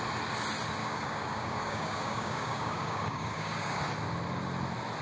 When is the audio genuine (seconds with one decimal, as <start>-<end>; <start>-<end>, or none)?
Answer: 0.0-0.8; 3.8-5.0